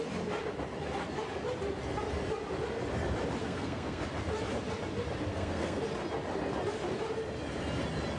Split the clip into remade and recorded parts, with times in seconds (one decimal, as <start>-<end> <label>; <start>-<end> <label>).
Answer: 0.0-3.4 recorded; 3.4-4.0 remade; 4.0-5.3 recorded; 5.3-5.8 remade; 5.8-8.2 recorded